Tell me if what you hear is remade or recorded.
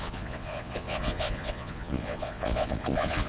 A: remade